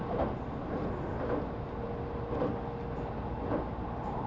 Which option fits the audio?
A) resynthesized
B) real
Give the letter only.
B